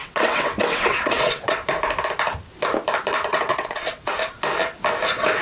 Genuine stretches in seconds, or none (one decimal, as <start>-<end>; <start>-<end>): 1.6-3.3; 4.1-5.4